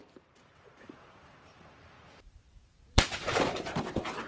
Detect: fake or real fake